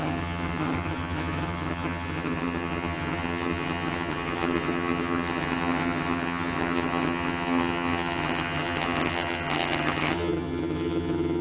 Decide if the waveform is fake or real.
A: fake